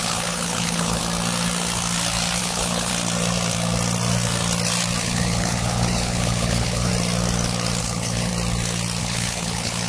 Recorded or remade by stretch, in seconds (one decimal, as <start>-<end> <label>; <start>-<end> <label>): 0.0-1.0 remade; 1.0-2.4 recorded; 2.4-2.9 remade; 2.9-5.0 recorded; 5.0-6.9 remade; 6.9-7.8 recorded; 7.8-8.3 remade; 8.3-9.0 recorded; 9.0-9.9 remade